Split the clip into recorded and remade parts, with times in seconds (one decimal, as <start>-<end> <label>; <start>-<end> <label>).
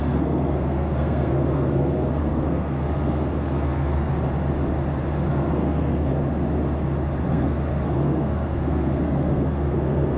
0.0-4.1 remade; 4.1-5.3 recorded; 5.3-6.1 remade; 6.1-7.3 recorded; 7.3-10.2 remade